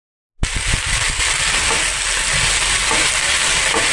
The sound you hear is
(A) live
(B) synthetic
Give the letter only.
A